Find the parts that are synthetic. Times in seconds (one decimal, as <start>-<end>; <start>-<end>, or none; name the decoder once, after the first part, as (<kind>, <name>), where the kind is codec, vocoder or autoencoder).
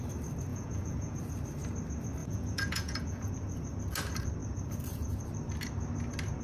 0.5-1.2 (vocoder, Vocos); 2.2-3.3